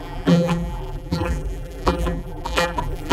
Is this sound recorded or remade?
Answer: remade